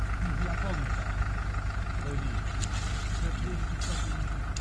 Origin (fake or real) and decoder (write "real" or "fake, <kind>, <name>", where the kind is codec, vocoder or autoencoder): real